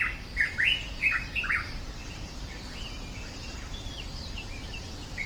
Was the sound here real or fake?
real